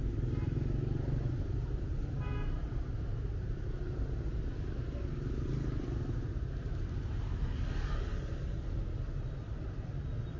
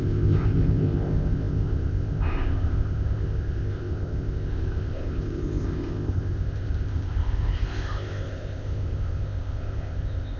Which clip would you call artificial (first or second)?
second